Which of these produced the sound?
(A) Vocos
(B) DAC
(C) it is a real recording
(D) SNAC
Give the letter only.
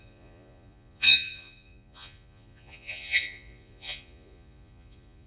A